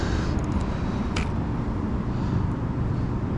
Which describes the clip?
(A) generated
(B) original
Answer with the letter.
B